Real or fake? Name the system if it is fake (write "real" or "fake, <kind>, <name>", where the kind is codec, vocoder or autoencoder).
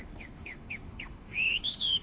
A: fake, autoencoder, DAC-VAE